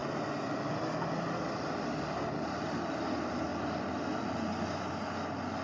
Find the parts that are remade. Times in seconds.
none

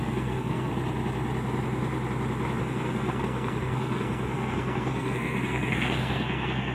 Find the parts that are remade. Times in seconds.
0.0-0.7 (codec, SNAC); 2.6-6.7

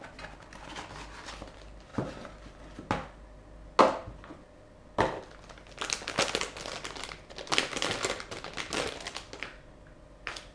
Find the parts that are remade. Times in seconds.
none

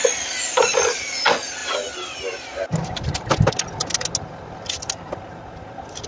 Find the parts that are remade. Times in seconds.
none

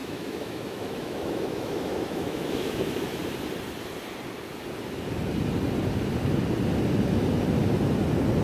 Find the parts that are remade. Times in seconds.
0.0-3.2 (autoencoder, DAC-VAE)

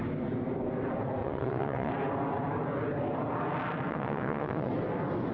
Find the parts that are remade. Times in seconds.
1.2-1.9 (vocoder, WaveNeXt); 3.9-4.7